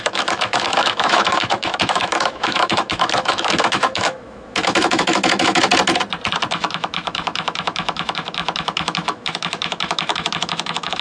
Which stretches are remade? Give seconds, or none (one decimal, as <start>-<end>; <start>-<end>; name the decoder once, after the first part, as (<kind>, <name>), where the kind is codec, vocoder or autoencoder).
0.0-5.7 (autoencoder, DAC-VAE); 6.5-11.0